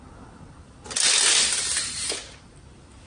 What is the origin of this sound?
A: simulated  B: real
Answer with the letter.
B